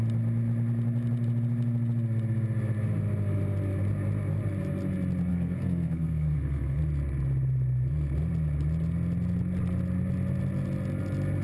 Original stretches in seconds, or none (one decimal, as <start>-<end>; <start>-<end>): 0.0-5.3; 6.8-11.4